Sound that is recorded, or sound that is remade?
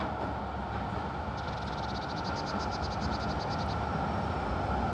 recorded